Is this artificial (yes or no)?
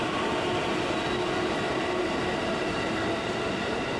no